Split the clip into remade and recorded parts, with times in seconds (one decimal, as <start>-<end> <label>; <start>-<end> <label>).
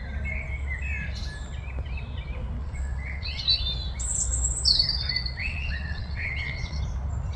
0.0-2.6 recorded; 2.6-3.4 remade; 3.4-5.4 recorded; 5.4-6.8 remade; 6.8-7.4 recorded